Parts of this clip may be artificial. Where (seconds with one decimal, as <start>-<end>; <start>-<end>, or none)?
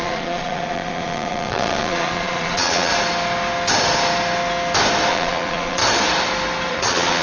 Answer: 0.0-2.9; 5.1-5.8; 6.7-7.2